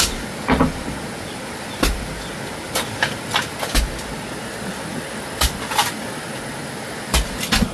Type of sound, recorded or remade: recorded